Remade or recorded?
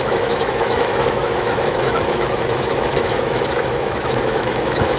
remade